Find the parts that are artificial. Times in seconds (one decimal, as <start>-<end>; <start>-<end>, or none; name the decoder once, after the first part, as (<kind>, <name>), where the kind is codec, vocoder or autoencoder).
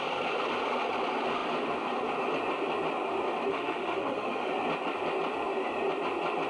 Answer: 3.5-4.5 (autoencoder, DAC-VAE)